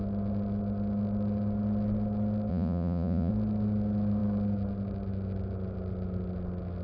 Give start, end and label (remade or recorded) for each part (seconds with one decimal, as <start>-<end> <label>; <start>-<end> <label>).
0.0-2.5 recorded; 2.5-3.3 remade; 3.3-6.8 recorded